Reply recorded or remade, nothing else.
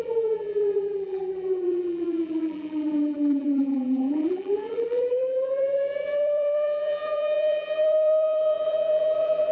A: remade